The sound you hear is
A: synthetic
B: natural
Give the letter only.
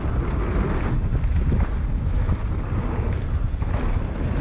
A